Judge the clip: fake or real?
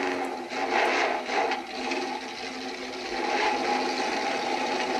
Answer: real